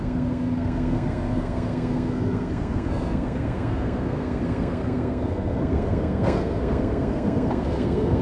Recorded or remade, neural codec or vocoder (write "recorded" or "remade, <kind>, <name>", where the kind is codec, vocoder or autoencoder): remade, codec, SNAC